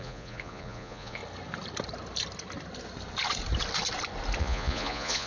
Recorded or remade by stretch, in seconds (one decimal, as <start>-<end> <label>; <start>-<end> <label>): 0.0-1.2 remade; 1.2-4.4 recorded; 4.4-5.3 remade